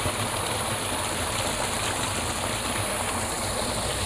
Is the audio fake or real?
real